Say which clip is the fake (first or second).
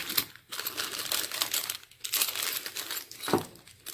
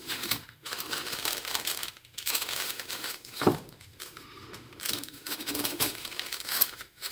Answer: second